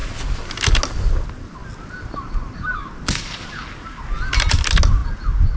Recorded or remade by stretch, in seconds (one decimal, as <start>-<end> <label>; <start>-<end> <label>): 0.0-5.6 recorded